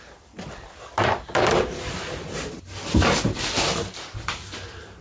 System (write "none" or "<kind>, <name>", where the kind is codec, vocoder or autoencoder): vocoder, BigVGAN v2